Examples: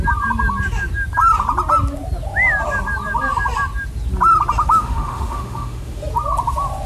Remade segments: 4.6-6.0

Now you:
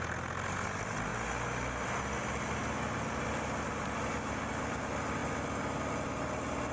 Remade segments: none

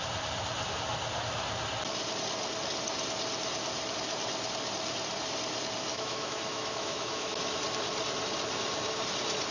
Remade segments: 5.9-7.4

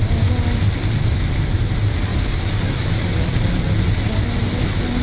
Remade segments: none

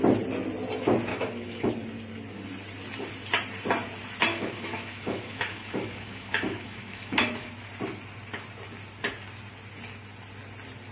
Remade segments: 1.1-1.7; 4.3-7.5

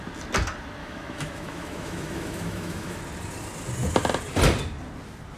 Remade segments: 0.8-3.0

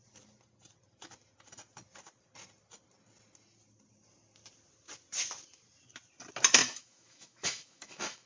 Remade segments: 6.6-8.3